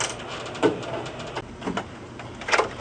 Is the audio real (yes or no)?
yes